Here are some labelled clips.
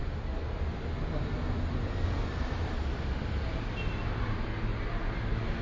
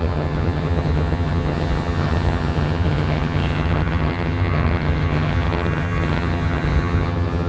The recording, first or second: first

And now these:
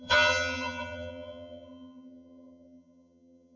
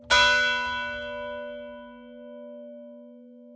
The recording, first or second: second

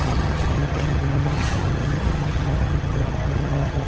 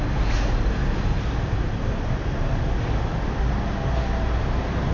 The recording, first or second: second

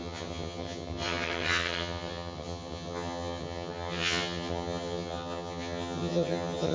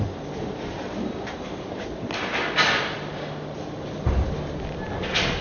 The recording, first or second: second